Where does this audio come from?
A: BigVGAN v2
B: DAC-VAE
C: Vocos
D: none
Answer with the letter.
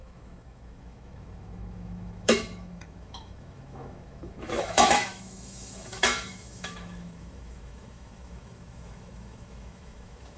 B